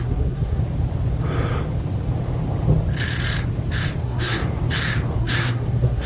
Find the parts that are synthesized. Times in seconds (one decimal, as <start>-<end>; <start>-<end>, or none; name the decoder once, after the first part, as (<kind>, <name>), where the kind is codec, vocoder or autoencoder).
0.0-0.6 (codec, SNAC); 4.0-4.4; 5.2-6.1